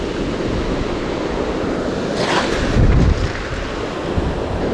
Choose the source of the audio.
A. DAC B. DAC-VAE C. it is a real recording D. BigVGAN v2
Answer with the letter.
C